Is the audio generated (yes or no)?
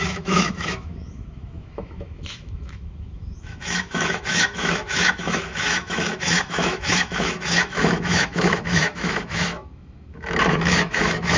yes